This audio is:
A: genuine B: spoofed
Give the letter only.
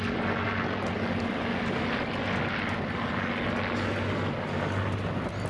A